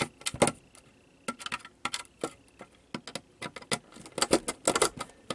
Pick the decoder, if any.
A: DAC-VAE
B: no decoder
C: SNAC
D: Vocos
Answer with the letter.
B